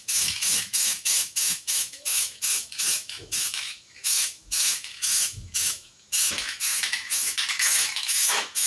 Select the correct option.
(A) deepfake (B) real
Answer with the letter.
A